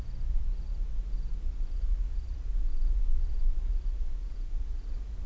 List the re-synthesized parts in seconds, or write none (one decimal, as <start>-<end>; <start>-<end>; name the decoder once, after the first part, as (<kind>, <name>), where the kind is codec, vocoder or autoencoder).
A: none